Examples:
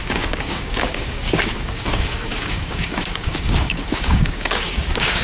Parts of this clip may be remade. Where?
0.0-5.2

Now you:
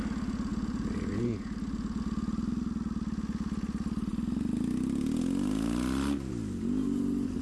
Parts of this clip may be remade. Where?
0.5-2.0

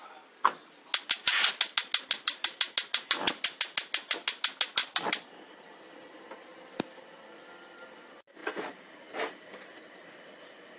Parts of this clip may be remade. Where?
4.8-5.3

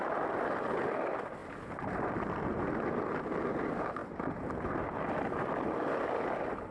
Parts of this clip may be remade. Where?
none

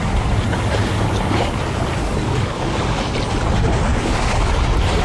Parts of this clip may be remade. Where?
0.8-1.6; 2.0-3.0; 3.9-4.5

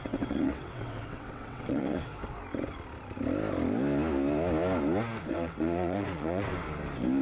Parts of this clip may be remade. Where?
0.0-2.1; 5.3-6.5

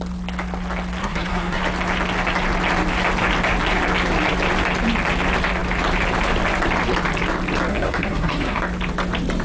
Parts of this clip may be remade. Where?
1.0-1.6; 7.7-8.6

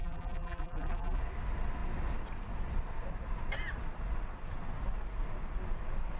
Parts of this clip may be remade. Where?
0.0-1.2